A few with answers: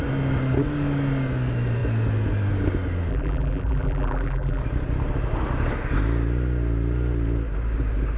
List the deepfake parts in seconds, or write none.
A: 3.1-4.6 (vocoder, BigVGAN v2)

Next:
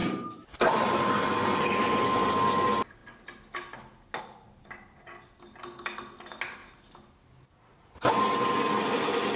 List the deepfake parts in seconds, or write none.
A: 0.0-1.1 (vocoder, BigVGAN v2)

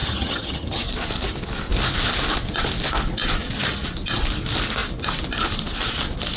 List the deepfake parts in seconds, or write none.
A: 0.0-0.8 (vocoder, HiFi-GAN)

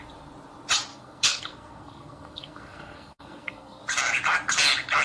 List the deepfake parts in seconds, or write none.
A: 0.9-3.8 (codec, SNAC)

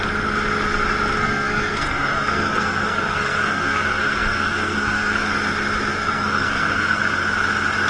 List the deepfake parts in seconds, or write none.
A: 1.2-5.3 (codec, SNAC); 5.9-7.0